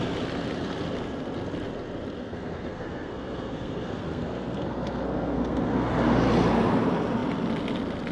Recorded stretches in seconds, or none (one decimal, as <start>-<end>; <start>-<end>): 0.0-2.2; 5.9-8.1